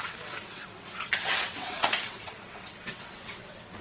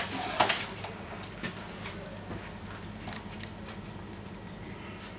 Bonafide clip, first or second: second